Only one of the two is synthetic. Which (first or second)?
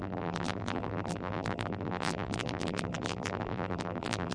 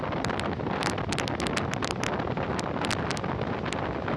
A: first